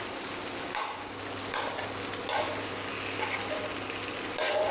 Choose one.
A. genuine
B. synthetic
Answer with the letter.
A